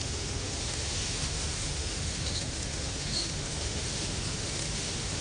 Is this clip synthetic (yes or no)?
yes